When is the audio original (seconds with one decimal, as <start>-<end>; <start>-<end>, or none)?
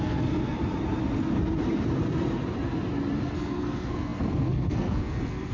0.6-3.3